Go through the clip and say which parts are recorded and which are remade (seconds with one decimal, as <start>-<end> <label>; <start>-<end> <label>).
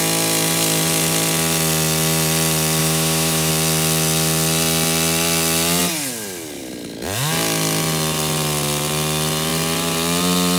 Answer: 0.0-2.8 recorded; 2.8-3.5 remade; 3.5-10.6 recorded